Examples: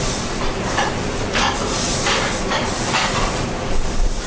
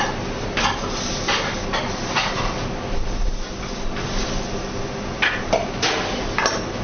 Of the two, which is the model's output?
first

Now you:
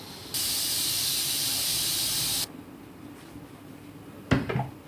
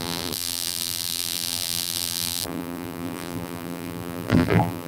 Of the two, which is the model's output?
second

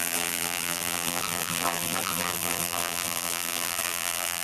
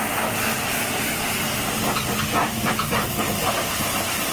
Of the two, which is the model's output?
first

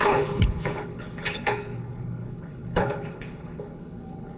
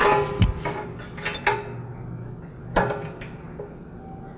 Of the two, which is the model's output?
first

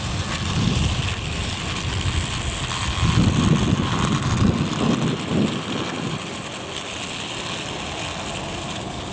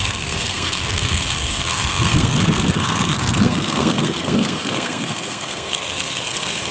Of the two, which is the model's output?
second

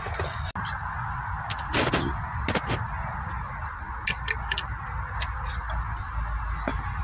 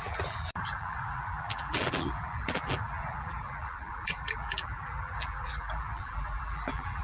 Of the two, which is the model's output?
second